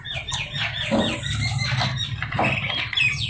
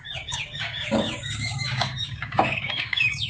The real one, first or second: first